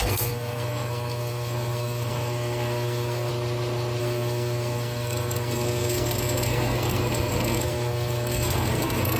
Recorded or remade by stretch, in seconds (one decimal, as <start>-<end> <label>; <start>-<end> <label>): 0.0-3.3 remade; 3.3-4.0 recorded; 4.0-9.2 remade